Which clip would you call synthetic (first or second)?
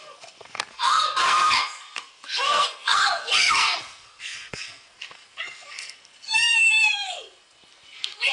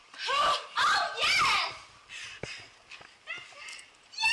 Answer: first